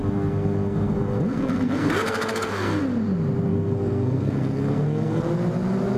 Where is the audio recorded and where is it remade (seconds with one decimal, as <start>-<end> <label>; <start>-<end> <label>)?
0.0-2.8 remade; 2.8-3.5 recorded; 3.5-5.2 remade; 5.2-6.0 recorded